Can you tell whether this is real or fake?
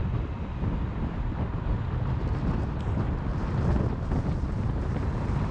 real